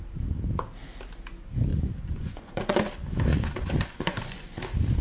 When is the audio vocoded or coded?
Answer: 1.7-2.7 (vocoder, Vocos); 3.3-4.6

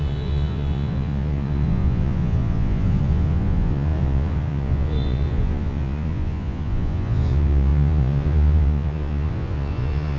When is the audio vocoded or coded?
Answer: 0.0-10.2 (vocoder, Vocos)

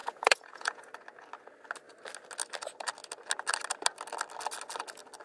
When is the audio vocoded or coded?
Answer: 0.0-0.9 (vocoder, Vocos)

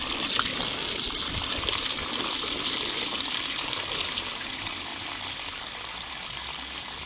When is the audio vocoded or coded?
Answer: none

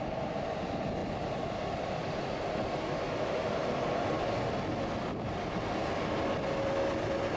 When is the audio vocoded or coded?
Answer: none

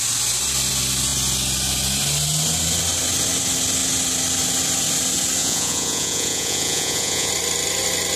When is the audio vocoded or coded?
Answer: 5.4-7.3 (vocoder, Vocos)

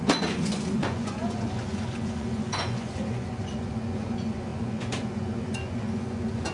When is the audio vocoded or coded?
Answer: 0.0-6.5 (vocoder, Vocos)